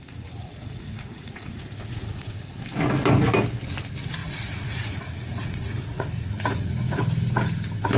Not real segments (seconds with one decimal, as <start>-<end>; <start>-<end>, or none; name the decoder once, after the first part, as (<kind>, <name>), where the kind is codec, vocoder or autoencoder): 0.4-2.6 (vocoder, Vocos); 4.2-7.0

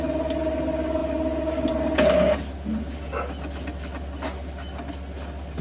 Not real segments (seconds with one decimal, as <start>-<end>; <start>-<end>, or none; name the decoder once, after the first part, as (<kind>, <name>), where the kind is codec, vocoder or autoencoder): none